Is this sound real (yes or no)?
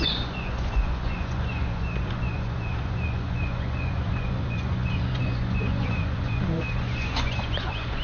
no